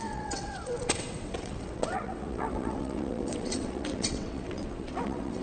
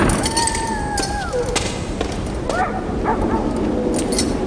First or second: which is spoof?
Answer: first